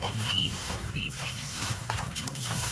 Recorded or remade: remade